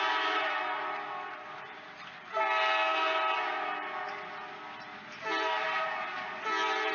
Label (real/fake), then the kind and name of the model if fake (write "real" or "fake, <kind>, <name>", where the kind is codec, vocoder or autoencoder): real